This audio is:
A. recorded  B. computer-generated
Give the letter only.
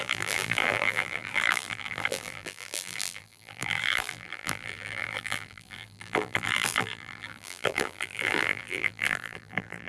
B